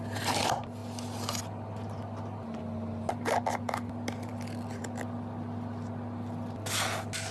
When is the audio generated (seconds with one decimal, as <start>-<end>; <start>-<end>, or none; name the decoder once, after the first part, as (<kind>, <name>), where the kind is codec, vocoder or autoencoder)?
none